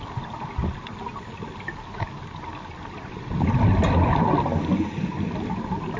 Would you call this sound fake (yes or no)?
no